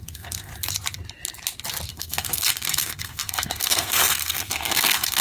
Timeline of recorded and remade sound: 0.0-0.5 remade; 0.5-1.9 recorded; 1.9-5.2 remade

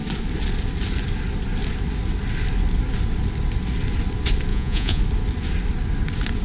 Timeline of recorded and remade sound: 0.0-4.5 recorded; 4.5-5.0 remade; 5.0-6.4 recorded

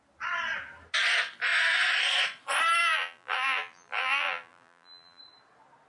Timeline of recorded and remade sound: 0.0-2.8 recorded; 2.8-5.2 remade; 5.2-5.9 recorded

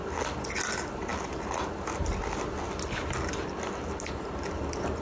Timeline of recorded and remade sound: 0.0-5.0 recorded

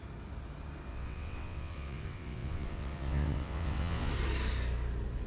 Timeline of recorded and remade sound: 0.0-0.9 recorded; 0.9-4.1 remade; 4.1-5.3 recorded